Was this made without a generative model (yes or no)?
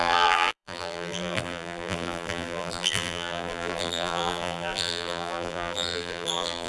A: no